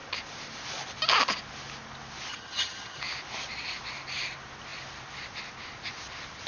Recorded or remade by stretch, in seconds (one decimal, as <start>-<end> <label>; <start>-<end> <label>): 0.0-2.3 recorded; 2.3-3.0 remade; 3.0-6.5 recorded